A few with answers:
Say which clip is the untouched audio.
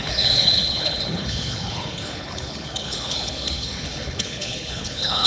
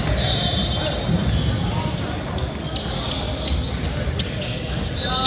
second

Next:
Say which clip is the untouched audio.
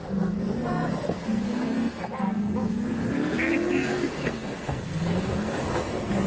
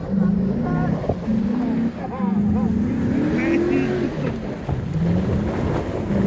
second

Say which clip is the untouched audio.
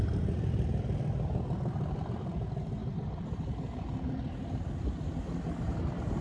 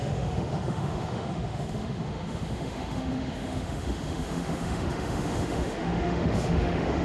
first